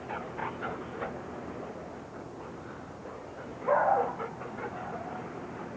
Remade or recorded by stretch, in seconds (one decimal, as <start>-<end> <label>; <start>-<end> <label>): 0.0-5.8 recorded